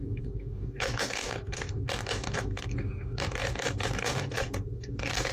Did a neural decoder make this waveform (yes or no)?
yes